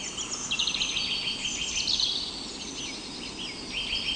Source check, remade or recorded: recorded